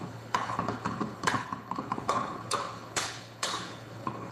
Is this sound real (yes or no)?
no